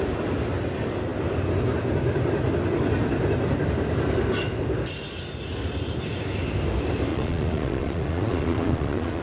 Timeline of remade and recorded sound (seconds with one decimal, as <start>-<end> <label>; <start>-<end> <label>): 0.0-7.1 recorded; 7.1-9.2 remade